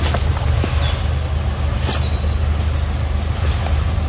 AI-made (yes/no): no